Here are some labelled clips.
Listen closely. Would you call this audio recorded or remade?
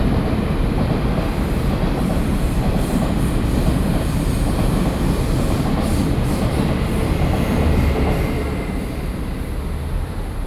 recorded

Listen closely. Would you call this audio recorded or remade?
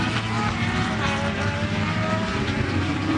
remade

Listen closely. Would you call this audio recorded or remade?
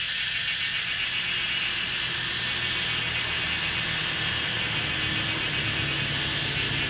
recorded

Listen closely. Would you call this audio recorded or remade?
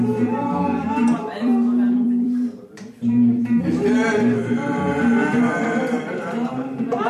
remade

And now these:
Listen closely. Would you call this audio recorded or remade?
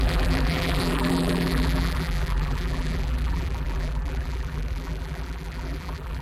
remade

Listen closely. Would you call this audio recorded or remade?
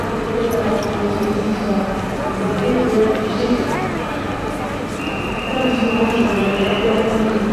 recorded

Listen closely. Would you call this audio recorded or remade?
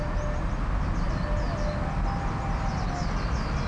recorded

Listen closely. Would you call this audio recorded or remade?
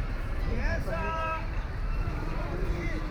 remade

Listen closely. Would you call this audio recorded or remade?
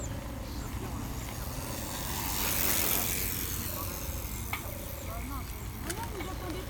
recorded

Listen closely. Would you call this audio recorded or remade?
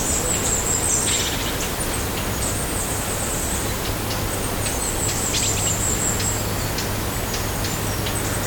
recorded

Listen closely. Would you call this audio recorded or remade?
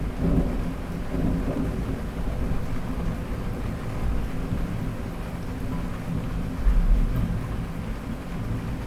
recorded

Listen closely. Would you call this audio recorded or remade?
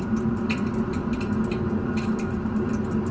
recorded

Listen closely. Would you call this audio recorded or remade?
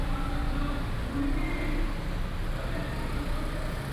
recorded